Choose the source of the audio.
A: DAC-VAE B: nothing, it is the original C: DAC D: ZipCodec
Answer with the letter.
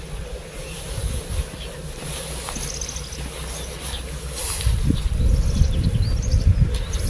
B